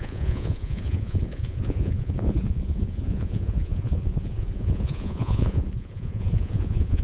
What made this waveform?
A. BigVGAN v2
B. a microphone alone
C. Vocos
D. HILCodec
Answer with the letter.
C